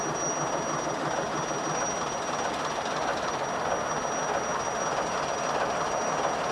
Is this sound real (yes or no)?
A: yes